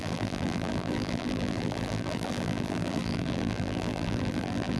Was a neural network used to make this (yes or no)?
yes